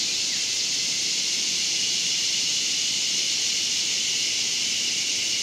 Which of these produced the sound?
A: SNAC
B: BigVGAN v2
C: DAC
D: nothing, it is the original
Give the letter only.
D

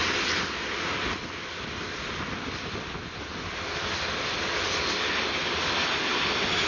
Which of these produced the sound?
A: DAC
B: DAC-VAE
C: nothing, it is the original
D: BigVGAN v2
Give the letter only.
C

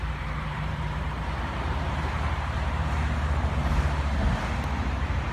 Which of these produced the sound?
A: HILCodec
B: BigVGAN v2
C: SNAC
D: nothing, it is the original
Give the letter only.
B